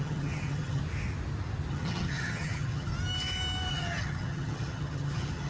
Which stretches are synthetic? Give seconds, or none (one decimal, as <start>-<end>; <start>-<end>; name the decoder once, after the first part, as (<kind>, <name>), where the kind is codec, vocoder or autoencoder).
0.0-0.8 (vocoder, HiFi-GAN); 1.7-2.9; 3.7-5.5